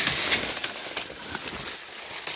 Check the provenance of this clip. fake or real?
real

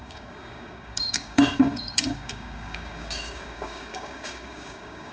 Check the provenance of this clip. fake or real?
fake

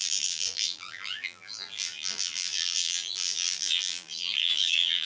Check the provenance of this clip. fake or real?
fake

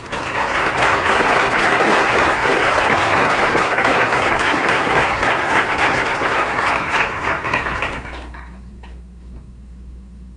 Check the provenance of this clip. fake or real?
fake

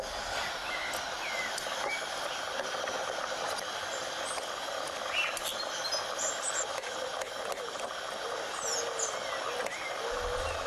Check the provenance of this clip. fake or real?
real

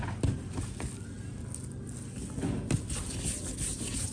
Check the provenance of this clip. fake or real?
real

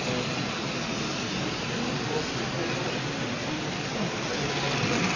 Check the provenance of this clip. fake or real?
real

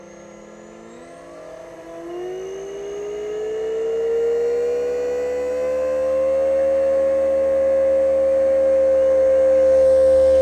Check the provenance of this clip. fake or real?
real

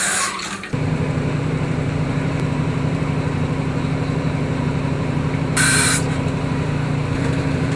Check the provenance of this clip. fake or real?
fake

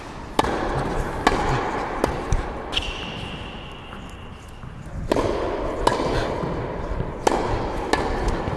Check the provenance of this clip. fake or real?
real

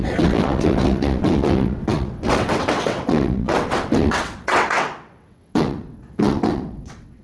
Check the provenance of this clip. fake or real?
fake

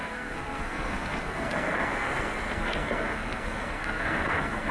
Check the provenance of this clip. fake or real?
fake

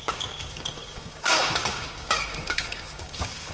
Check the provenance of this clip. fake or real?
fake